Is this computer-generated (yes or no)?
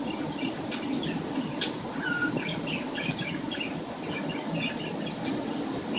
no